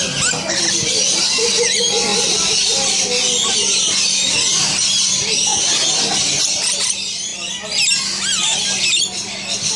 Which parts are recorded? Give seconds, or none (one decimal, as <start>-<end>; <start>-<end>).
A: 5.5-6.1; 7.3-9.0